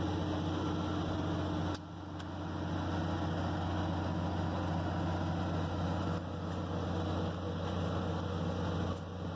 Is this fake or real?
real